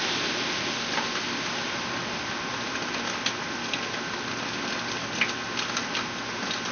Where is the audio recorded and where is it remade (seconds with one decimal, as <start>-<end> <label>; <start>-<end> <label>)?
0.0-6.7 recorded